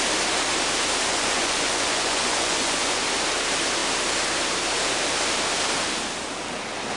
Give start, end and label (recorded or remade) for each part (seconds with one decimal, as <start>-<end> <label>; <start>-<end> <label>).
0.0-1.1 recorded; 1.1-3.0 remade; 3.0-7.0 recorded